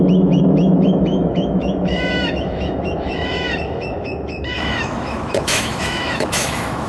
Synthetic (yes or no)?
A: yes